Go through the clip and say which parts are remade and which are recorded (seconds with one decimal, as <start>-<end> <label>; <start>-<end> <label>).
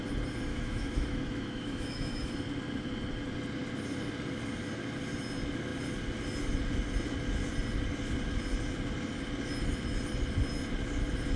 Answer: 0.0-0.5 recorded; 0.5-2.3 remade; 2.3-11.4 recorded